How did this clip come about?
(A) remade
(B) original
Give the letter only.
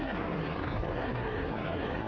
A